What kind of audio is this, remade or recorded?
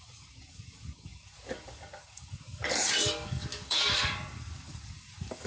remade